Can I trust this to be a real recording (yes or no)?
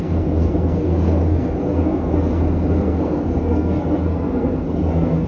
no